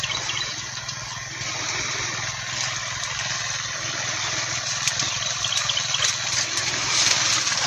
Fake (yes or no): no